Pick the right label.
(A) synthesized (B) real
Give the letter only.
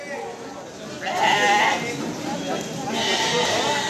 B